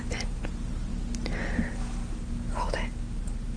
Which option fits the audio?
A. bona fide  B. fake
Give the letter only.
A